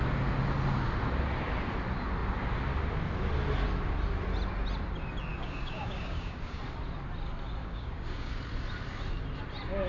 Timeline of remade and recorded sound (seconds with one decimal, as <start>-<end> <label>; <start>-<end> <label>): 0.0-5.3 recorded; 5.3-6.6 remade; 6.6-7.6 recorded; 7.6-8.4 remade; 8.4-9.9 recorded

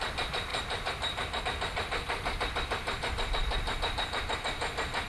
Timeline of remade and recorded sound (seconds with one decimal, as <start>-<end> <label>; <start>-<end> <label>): 0.0-5.1 recorded

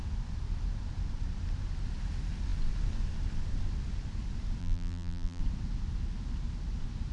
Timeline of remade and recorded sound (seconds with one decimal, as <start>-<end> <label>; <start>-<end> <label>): 0.0-4.6 recorded; 4.6-5.4 remade; 5.4-7.1 recorded

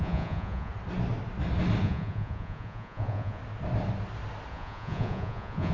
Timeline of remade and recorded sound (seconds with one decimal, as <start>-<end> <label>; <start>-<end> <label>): 0.0-0.7 remade; 0.7-1.8 recorded; 1.8-3.4 remade; 3.4-4.5 recorded; 4.5-5.7 remade

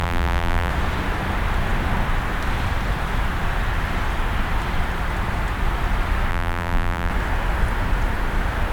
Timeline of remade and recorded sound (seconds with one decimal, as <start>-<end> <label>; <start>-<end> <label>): 0.0-0.7 remade; 0.7-6.3 recorded; 6.3-7.1 remade; 7.1-8.7 recorded

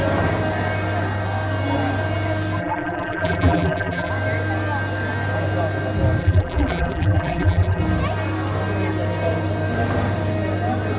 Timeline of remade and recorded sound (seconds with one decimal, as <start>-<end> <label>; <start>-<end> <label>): 0.0-2.6 recorded; 2.6-4.1 remade; 4.1-6.2 recorded; 6.2-7.8 remade; 7.8-11.0 recorded

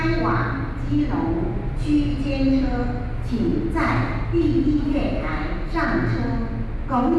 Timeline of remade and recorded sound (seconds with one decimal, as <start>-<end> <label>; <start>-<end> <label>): 0.0-7.2 recorded